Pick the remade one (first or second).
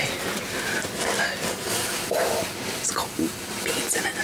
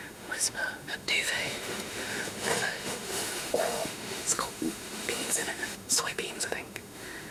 second